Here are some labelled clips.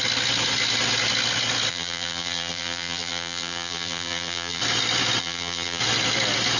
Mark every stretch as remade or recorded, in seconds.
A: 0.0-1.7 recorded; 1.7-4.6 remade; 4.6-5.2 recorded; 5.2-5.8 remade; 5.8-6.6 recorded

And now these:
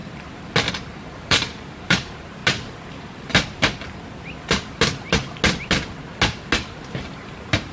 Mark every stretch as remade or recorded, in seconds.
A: 0.0-0.7 recorded; 0.7-2.4 remade; 2.4-6.8 recorded; 6.8-7.7 remade

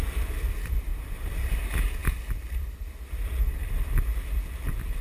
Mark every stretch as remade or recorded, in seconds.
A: 0.0-0.9 recorded; 0.9-1.6 remade; 1.6-5.0 recorded

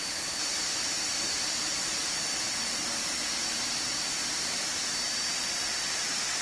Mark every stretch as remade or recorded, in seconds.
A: 0.0-0.5 recorded; 0.5-2.0 remade; 2.0-5.3 recorded; 5.3-6.4 remade

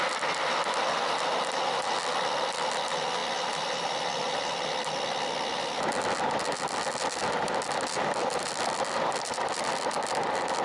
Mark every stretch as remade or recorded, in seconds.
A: 0.0-10.6 recorded